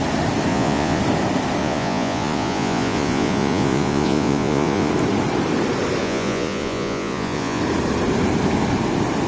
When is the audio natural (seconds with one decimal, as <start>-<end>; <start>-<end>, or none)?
0.0-0.5; 1.0-1.6; 4.9-6.0; 7.6-9.3